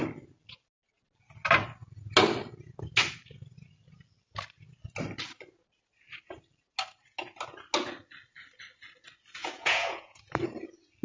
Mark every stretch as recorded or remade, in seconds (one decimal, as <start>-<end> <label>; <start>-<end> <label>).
0.0-9.4 recorded; 9.4-10.2 remade; 10.2-11.0 recorded